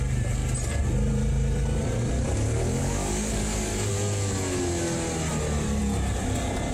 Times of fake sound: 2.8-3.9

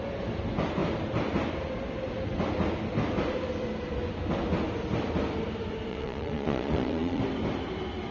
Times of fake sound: 5.9-7.2

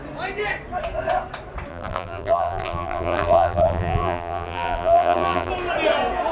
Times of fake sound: 1.7-5.5

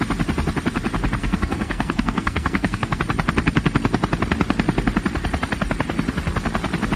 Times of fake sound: 1.2-3.0

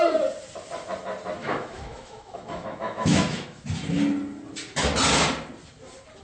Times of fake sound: 1.4-3.6

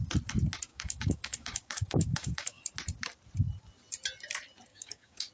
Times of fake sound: 0.7-2.6; 4.7-5.3